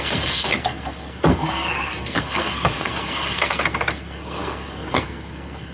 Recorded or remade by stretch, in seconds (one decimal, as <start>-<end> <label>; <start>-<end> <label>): 0.0-5.7 remade